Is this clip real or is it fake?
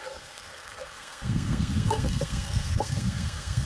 fake